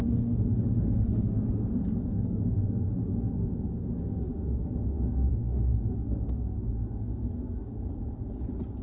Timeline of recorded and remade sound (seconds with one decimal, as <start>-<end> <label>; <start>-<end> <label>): 0.0-1.4 remade; 1.4-2.1 recorded; 2.1-7.7 remade; 7.7-8.8 recorded